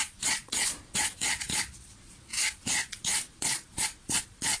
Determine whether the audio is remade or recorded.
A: remade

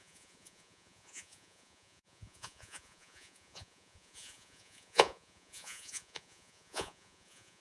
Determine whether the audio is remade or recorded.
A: remade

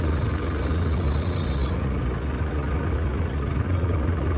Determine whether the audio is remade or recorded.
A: remade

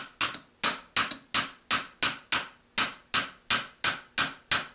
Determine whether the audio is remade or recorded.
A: recorded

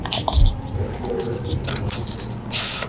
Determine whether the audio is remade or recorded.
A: recorded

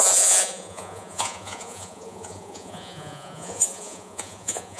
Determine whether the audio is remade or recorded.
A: remade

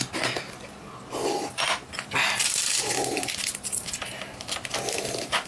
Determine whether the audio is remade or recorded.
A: recorded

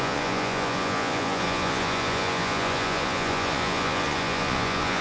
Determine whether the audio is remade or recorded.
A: remade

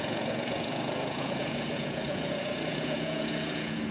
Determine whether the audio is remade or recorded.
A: remade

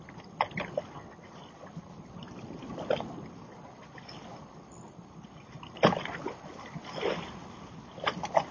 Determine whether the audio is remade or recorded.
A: recorded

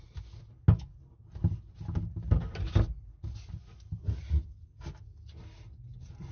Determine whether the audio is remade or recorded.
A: recorded